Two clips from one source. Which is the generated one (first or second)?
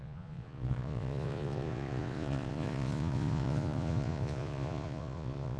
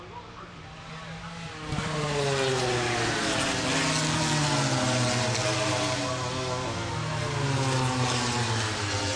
first